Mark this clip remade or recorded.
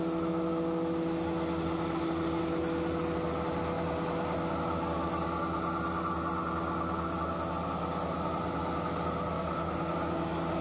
recorded